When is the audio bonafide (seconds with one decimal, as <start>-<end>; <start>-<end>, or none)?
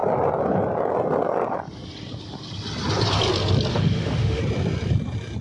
0.0-3.7; 4.4-5.4